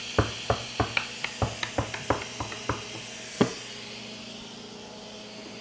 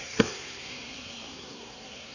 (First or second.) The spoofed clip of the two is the second